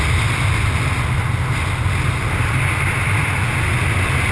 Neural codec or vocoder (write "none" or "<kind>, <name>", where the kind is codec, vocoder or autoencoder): none